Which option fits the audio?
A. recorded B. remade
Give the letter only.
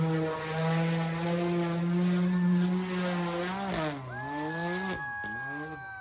A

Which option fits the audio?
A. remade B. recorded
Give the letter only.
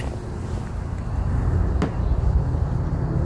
B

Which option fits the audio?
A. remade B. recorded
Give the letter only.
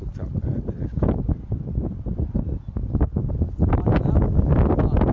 B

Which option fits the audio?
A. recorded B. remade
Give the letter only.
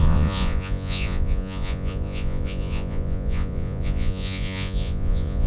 B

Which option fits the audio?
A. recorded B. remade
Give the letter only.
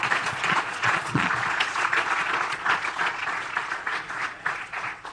B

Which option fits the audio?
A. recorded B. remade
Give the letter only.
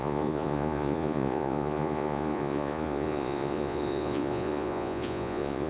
B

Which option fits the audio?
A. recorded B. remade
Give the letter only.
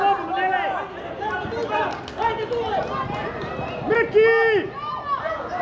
A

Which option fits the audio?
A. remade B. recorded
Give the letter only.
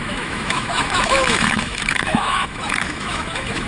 A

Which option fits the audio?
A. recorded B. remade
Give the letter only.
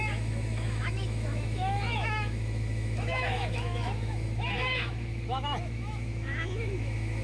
B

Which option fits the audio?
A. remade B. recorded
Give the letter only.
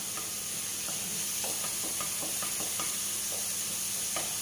B